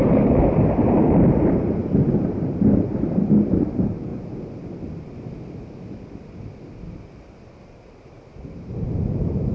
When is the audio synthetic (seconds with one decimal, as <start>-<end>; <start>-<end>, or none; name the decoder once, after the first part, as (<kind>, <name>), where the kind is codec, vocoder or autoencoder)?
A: 0.0-1.8 (vocoder, BigVGAN v2); 3.5-4.1; 7.7-9.5